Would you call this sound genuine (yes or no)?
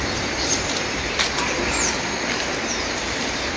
yes